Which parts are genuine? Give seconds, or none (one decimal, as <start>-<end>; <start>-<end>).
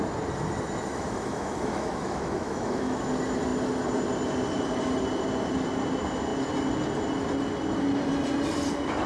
0.0-0.9; 3.1-9.1